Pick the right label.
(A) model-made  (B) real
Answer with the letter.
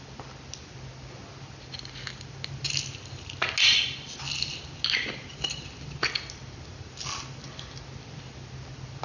B